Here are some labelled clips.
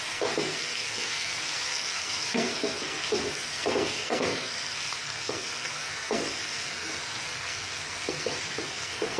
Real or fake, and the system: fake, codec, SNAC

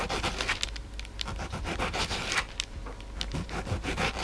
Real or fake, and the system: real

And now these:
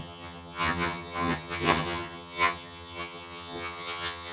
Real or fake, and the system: fake, vocoder, HiFi-GAN